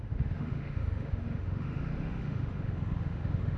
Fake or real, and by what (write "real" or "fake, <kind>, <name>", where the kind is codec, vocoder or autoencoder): fake, autoencoder, DAC-VAE